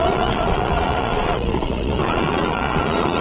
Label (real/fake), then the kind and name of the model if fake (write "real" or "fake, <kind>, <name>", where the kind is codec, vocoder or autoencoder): fake, vocoder, Vocos